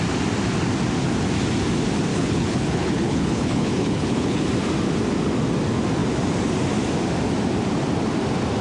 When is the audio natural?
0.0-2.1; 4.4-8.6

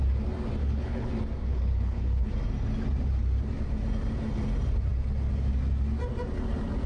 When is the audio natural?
0.0-0.6; 1.1-1.5; 2.3-6.9

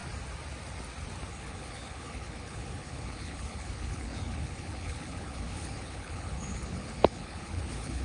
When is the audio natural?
0.0-1.3